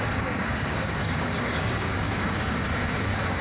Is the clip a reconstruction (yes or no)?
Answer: yes